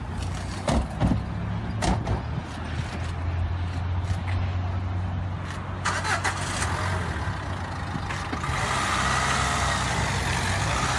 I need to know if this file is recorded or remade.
recorded